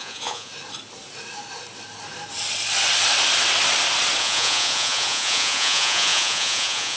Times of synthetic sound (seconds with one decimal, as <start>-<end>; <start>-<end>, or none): 0.0-0.5; 4.2-7.0